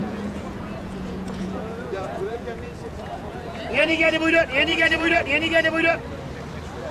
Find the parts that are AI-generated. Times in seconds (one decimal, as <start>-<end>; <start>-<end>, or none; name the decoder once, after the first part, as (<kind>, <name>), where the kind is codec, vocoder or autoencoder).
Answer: 0.0-4.1 (vocoder, Vocos); 4.7-5.3